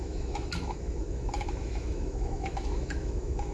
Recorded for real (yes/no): no